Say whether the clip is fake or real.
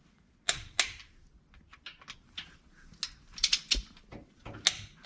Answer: real